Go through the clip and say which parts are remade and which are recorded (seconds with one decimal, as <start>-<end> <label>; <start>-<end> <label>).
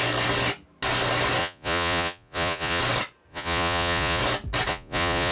0.0-1.4 recorded; 1.4-2.8 remade; 2.8-3.3 recorded; 3.3-4.2 remade; 4.2-4.7 recorded; 4.7-5.3 remade